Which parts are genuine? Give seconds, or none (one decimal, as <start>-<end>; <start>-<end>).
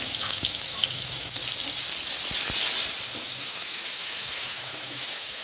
1.4-3.2